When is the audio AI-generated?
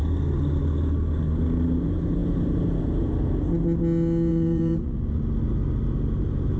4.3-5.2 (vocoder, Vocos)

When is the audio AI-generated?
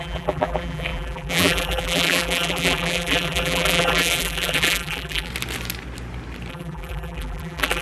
0.0-5.3 (vocoder, BigVGAN v2); 6.5-7.8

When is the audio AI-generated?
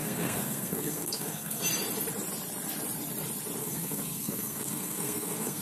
0.0-1.6 (codec, SNAC); 3.6-5.6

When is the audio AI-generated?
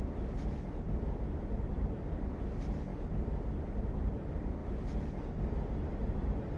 none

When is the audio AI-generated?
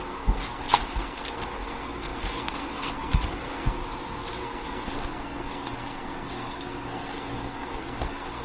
0.0-3.8 (codec, SNAC); 4.4-8.4